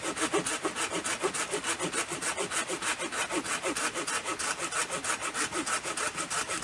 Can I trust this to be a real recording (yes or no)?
yes